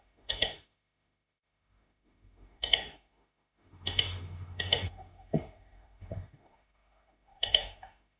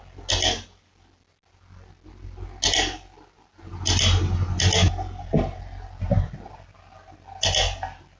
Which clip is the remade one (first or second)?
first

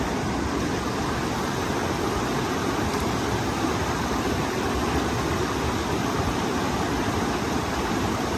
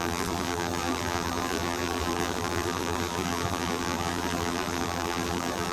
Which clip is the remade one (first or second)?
second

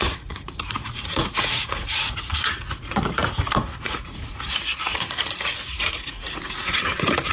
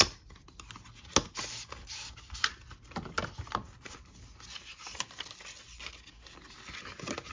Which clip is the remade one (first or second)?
first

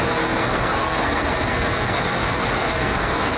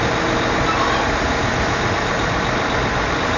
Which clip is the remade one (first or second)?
first